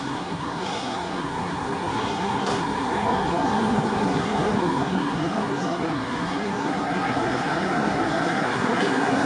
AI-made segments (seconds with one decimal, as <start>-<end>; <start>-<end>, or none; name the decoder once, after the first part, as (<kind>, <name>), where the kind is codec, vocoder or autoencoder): 0.0-9.3 (codec, SNAC)